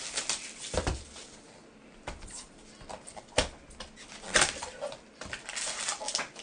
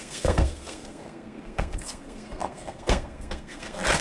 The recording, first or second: first